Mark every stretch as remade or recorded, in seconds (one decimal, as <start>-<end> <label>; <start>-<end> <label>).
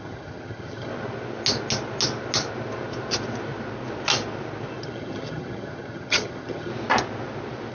0.0-0.9 remade; 0.9-4.8 recorded; 4.8-6.7 remade; 6.7-7.7 recorded